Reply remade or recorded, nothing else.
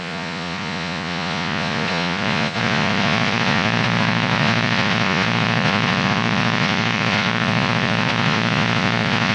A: remade